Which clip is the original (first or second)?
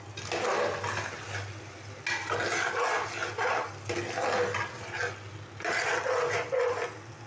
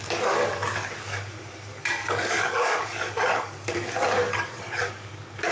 first